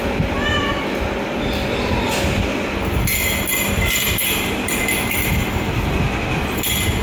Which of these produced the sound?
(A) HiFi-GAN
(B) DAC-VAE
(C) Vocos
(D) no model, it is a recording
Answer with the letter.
D